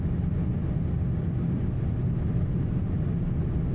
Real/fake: real